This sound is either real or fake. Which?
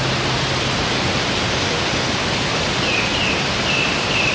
real